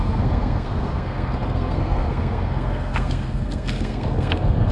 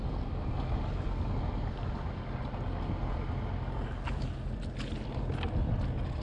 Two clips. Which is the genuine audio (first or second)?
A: second